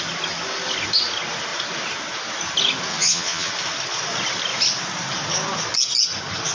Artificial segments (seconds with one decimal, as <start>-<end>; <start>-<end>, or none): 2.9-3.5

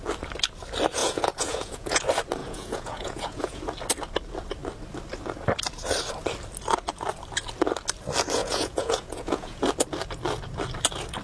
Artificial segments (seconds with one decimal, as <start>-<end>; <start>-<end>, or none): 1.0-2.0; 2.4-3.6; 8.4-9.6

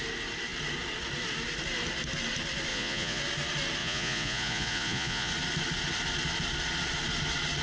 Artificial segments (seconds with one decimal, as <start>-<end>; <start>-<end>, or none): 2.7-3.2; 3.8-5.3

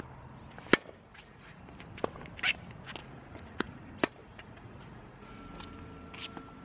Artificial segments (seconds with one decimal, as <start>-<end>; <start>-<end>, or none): 1.1-1.6; 3.0-3.8; 4.2-5.3

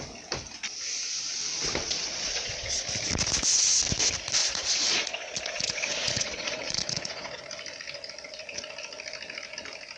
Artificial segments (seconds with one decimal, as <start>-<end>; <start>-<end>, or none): 1.8-2.8; 4.4-7.4

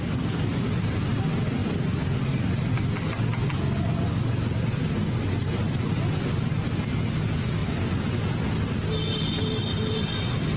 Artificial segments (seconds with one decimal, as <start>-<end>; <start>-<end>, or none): none